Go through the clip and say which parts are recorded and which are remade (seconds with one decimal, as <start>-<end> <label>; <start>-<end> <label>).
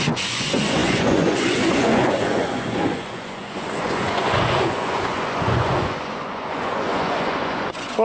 0.0-8.0 remade